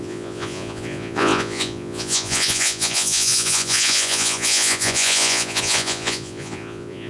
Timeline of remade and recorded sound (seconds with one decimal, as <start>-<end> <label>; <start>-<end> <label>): 0.0-7.1 remade